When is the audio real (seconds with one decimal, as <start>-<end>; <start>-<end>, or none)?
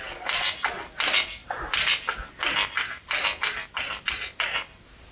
0.0-5.1